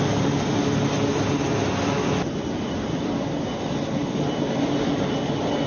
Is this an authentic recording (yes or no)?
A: yes